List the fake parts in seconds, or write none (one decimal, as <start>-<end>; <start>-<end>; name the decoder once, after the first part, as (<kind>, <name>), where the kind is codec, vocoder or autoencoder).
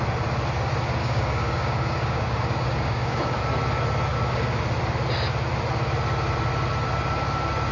1.0-3.4 (codec, DAC); 4.1-4.6